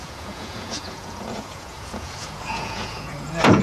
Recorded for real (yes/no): no